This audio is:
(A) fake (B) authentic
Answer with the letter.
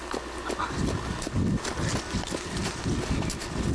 B